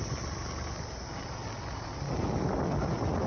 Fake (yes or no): no